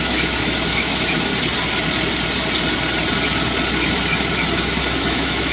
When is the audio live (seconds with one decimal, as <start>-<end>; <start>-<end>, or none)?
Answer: 1.3-4.6